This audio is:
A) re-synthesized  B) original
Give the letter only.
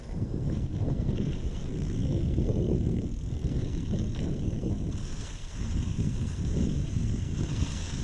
A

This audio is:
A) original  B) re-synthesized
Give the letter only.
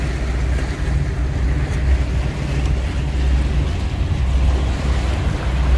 A